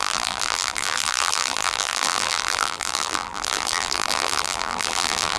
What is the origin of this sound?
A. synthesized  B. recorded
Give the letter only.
A